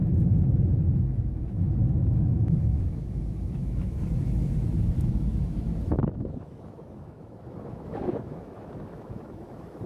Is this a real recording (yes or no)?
no